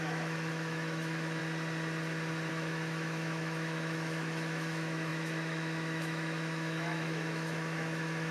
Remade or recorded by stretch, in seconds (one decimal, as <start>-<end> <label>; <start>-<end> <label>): 0.0-1.4 remade; 1.4-2.5 recorded; 2.5-8.3 remade

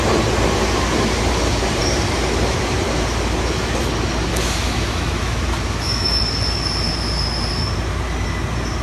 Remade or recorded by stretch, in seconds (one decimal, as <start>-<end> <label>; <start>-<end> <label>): 0.0-4.3 recorded; 4.3-6.2 remade; 6.2-8.8 recorded

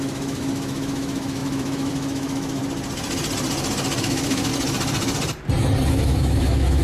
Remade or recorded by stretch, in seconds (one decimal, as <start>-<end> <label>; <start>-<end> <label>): 0.0-2.6 remade; 2.6-4.0 recorded; 4.0-4.5 remade; 4.5-5.9 recorded; 5.9-6.8 remade

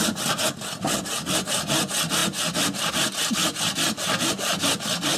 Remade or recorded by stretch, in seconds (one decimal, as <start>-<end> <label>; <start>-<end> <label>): 0.0-5.2 recorded

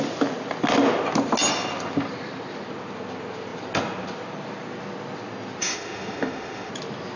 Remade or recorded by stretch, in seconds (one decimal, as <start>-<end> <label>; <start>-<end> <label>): 0.0-5.6 recorded; 5.6-6.7 remade; 6.7-7.2 recorded

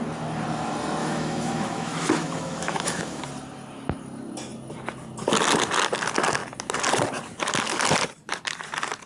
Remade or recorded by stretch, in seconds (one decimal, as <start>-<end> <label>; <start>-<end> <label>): 0.0-1.0 recorded; 1.0-3.2 remade; 3.2-9.1 recorded

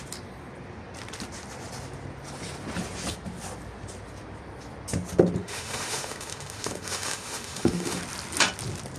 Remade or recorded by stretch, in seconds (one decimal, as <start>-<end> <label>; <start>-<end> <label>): 0.0-5.4 recorded; 5.4-8.0 remade; 8.0-9.0 recorded